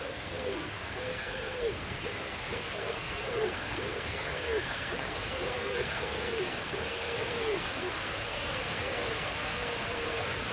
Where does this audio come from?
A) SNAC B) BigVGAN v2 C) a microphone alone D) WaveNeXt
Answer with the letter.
A